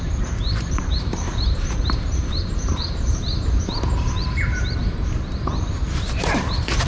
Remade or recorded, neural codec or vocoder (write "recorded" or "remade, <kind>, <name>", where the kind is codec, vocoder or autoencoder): remade, vocoder, BigVGAN v2